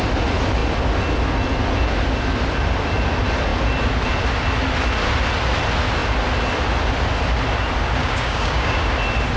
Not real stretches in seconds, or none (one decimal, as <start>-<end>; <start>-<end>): 8.0-8.9